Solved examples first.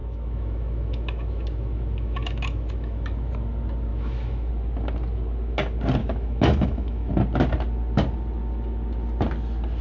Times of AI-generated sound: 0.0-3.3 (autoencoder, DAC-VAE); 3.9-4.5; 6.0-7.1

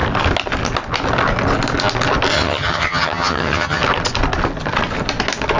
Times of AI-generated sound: 2.3-3.8 (vocoder, HiFi-GAN)

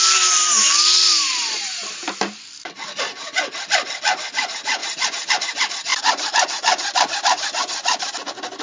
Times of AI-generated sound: 1.4-2.1 (vocoder, BigVGAN v2); 4.8-5.3; 5.9-8.1